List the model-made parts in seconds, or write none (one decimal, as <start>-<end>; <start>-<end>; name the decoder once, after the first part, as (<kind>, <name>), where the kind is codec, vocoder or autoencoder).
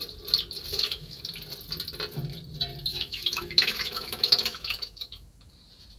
0.7-1.2 (autoencoder, DAC-VAE); 2.9-5.5